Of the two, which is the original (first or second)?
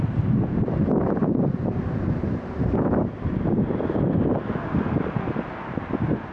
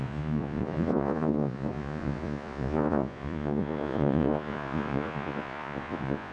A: first